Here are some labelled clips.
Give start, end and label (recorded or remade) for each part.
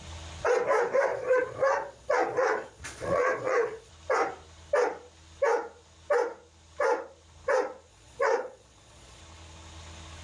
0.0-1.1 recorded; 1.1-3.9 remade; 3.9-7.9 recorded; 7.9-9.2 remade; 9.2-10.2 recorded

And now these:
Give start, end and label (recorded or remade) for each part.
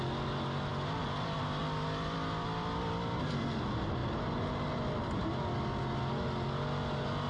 0.0-0.7 recorded; 0.7-3.2 remade; 3.2-7.3 recorded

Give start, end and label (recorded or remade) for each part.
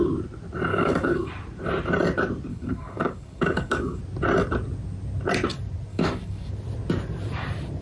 0.0-0.7 recorded; 0.7-1.3 remade; 1.3-2.5 recorded; 2.5-4.0 remade; 4.0-5.9 recorded; 5.9-6.5 remade; 6.5-7.8 recorded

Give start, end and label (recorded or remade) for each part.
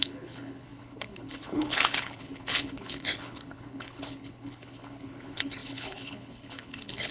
0.0-7.1 remade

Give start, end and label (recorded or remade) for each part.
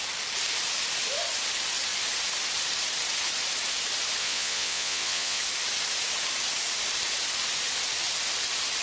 0.0-4.2 recorded; 4.2-5.4 remade; 5.4-8.8 recorded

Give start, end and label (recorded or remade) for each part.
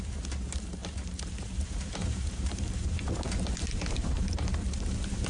0.0-5.3 remade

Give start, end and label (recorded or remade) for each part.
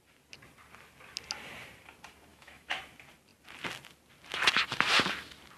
0.0-2.3 recorded; 2.3-2.8 remade; 2.8-5.6 recorded